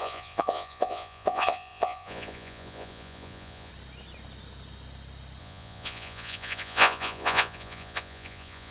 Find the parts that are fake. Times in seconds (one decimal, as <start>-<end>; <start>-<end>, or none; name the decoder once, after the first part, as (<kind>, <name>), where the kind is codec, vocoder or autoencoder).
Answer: 0.0-3.7 (vocoder, Vocos); 5.4-8.7